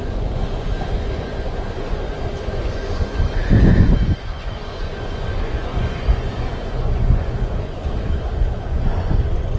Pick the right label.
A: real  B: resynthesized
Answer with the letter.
B